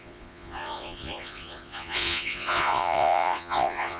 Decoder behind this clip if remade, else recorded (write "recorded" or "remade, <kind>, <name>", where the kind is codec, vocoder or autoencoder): remade, vocoder, Vocos